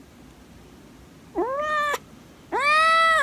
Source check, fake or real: real